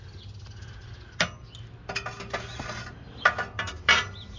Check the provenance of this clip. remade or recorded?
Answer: recorded